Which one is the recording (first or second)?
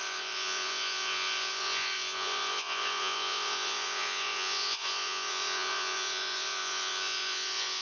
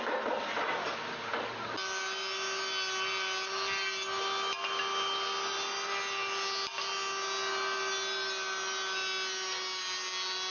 second